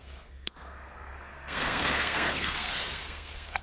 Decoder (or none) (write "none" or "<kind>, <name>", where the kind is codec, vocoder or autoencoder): codec, SNAC